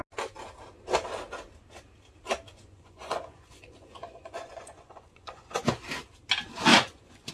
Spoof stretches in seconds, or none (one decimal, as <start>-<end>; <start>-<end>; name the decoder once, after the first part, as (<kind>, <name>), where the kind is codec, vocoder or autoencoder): 2.5-5.6 (vocoder, Vocos); 6.7-7.3